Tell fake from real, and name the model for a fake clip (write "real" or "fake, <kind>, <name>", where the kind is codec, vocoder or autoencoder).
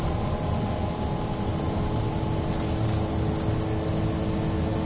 real